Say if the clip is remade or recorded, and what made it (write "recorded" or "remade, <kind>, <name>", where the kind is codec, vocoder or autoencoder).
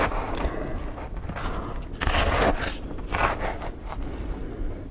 recorded